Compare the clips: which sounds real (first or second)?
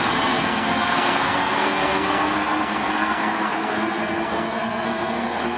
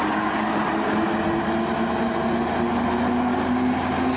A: second